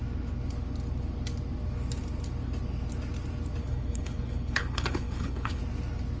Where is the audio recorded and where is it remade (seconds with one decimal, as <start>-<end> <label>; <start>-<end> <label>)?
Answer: 0.0-3.6 recorded; 3.6-5.6 remade; 5.6-6.2 recorded